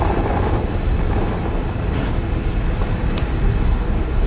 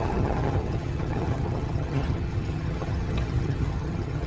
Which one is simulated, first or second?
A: second